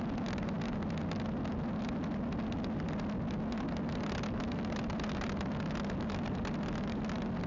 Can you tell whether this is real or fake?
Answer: real